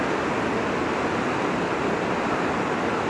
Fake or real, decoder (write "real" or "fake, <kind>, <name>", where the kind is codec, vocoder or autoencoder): real